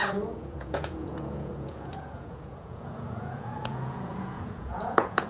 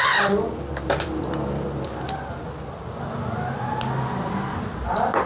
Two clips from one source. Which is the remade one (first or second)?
first